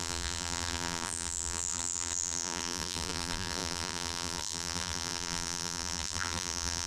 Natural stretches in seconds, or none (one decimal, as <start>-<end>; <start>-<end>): none